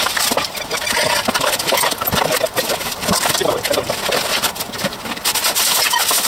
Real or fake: real